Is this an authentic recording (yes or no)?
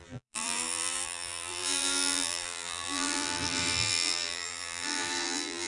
no